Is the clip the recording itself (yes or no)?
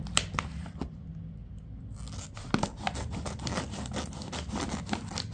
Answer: yes